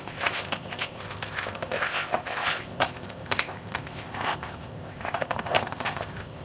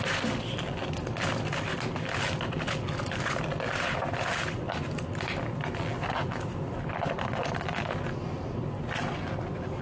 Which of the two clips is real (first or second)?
second